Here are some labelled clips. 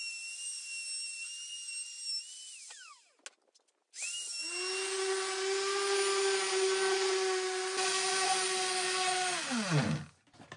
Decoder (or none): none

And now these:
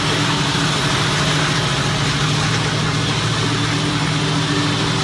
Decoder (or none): none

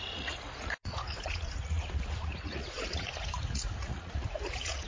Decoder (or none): vocoder, Vocos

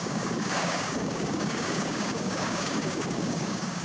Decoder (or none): codec, DAC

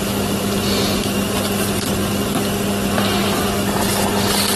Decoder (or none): none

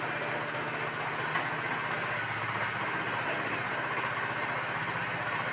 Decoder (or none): none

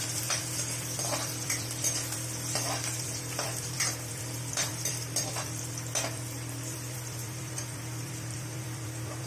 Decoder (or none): vocoder, BigVGAN v2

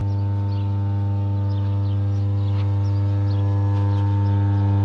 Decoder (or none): none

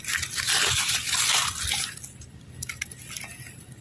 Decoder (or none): none